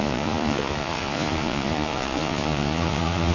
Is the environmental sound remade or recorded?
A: remade